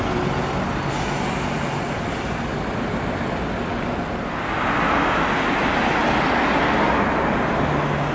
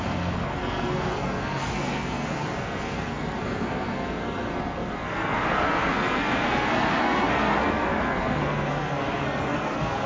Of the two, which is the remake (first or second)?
second